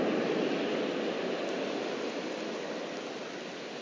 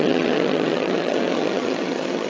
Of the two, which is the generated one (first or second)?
second